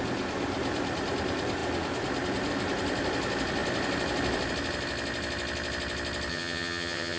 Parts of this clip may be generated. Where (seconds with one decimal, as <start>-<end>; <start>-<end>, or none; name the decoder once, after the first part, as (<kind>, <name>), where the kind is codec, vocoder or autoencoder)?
6.3-7.2 (vocoder, HiFi-GAN)